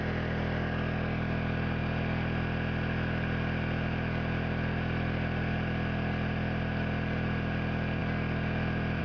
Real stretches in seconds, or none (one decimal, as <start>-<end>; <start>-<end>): 0.0-9.0